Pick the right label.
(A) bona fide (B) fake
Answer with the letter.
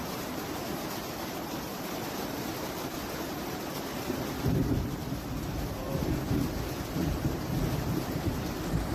B